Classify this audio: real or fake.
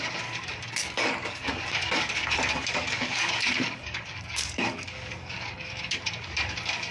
fake